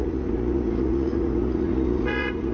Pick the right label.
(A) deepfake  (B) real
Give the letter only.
A